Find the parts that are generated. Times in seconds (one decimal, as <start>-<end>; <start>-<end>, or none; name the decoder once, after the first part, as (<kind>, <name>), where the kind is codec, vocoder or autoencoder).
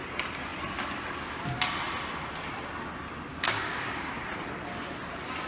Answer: 3.3-4.1 (codec, DAC)